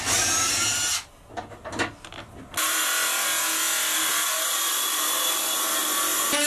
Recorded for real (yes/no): yes